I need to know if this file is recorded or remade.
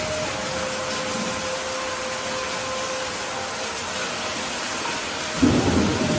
recorded